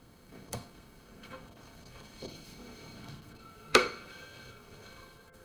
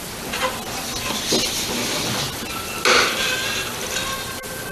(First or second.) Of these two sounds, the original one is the second